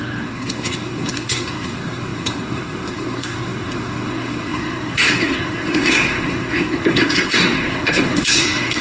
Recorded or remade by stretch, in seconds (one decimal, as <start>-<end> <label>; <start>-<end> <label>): 0.0-8.8 remade